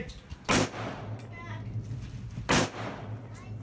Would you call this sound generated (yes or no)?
no